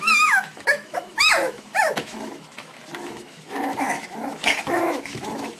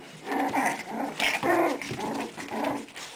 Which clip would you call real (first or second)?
second